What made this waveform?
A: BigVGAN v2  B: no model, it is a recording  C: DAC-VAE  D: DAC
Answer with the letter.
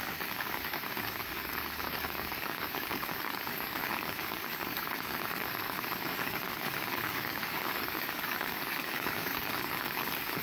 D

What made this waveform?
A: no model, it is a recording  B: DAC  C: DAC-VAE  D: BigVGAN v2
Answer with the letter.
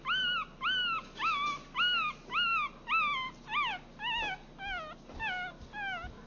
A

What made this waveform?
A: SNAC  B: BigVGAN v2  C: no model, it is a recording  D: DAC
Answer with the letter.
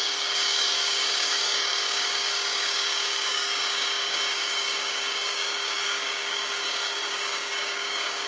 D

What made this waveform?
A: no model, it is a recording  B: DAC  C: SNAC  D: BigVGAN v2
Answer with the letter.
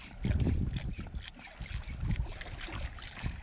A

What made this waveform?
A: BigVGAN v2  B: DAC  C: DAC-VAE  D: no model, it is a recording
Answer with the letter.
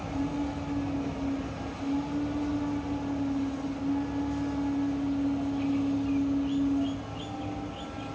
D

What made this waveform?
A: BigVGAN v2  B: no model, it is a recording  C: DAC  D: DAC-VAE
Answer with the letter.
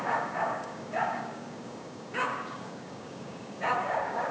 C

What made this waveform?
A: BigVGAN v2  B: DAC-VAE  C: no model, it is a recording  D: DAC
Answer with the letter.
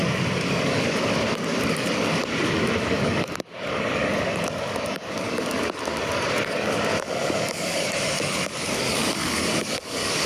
D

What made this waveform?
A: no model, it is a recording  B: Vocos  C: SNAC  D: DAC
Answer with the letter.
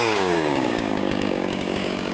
D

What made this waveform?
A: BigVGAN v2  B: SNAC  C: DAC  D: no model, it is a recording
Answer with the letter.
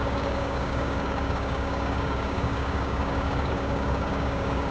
C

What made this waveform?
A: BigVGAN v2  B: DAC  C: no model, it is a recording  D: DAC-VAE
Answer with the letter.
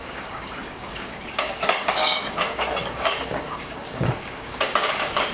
B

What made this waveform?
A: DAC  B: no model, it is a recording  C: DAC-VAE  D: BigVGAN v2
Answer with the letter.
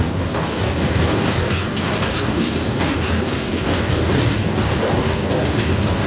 A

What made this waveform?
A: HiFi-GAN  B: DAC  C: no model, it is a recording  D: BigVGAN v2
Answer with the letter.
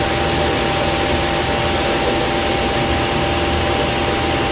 C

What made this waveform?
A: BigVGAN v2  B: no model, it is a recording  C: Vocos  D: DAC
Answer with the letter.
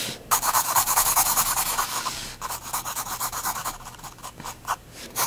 D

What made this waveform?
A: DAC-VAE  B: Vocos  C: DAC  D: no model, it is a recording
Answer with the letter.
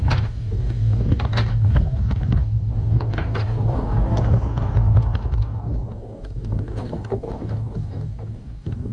C